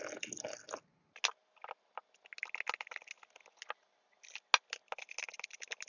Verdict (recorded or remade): recorded